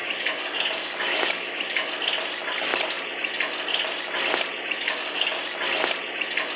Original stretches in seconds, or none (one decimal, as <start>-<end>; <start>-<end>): 1.9-4.8; 5.4-6.6